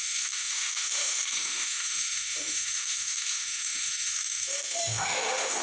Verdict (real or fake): fake